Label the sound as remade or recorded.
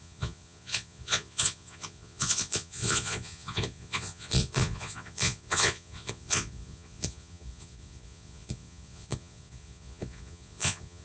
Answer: remade